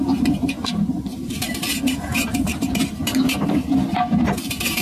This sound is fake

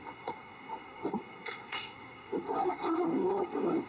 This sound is fake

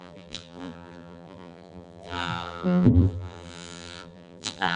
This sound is fake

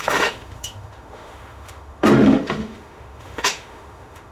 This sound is fake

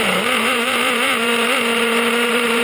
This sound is fake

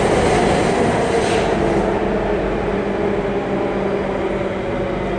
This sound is real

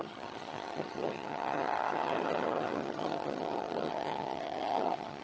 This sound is fake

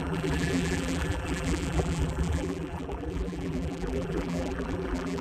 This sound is fake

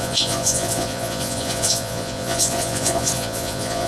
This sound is fake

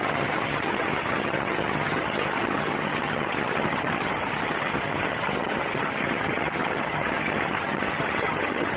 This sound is fake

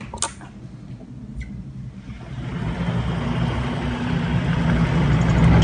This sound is real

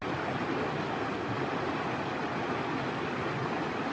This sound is real